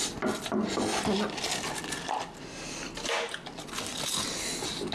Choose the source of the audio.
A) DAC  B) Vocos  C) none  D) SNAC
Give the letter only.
C